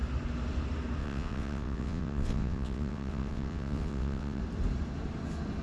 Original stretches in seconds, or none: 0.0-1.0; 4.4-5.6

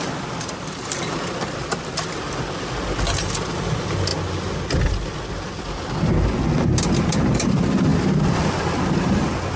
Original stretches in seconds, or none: 4.1-7.2

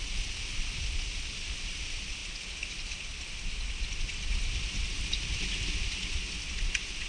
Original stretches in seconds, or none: 0.0-7.1

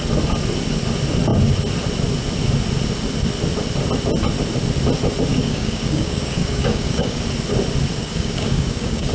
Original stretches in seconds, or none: 0.0-5.3; 7.2-8.0

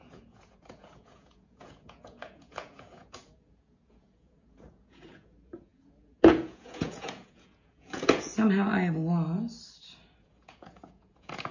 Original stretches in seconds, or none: 8.3-10.2

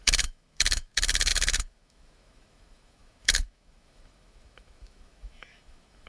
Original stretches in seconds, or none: none